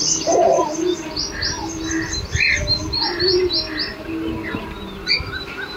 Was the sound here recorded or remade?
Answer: recorded